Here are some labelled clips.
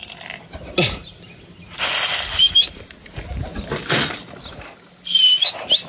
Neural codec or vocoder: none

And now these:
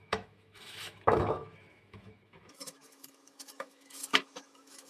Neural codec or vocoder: autoencoder, DAC-VAE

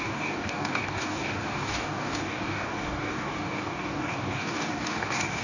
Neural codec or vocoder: codec, DAC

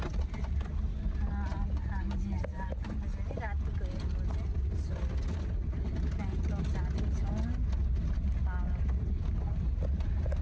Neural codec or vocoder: none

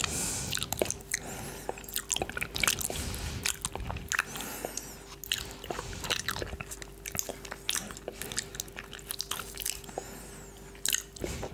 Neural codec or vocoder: none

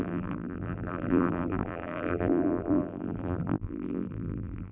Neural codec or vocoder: vocoder, BigVGAN v2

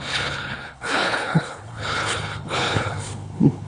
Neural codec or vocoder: codec, HILCodec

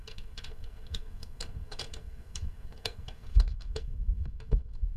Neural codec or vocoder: codec, SNAC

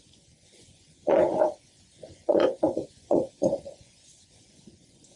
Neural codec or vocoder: vocoder, Vocos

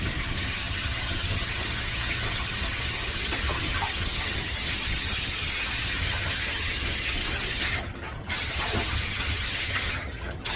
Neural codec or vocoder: vocoder, HiFi-GAN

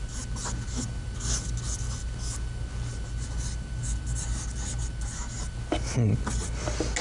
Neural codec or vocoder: none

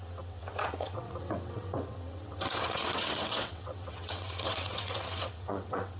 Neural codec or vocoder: vocoder, WaveNeXt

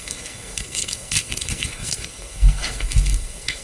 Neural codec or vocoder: codec, SNAC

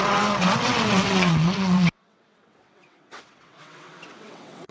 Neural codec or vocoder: vocoder, WaveNeXt